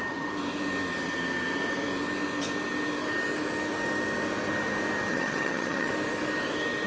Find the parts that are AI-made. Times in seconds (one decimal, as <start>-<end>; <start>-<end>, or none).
5.1-5.9